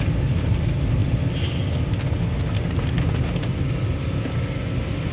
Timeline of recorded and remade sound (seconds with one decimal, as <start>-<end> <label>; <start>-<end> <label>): 0.0-5.1 recorded